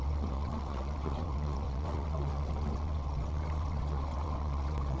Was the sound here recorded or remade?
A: remade